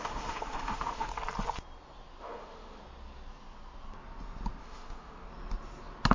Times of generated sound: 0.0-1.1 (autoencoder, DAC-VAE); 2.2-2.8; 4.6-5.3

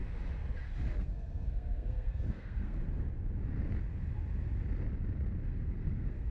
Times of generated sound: 1.0-2.8 (codec, SNAC); 5.4-6.3

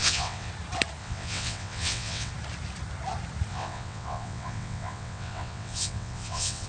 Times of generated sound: 0.0-0.5 (vocoder, WaveNeXt); 1.0-2.3; 3.5-6.7